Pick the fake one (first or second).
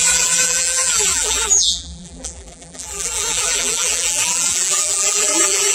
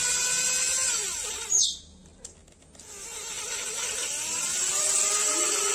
first